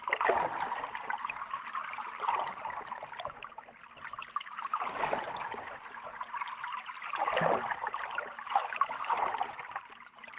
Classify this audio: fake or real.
real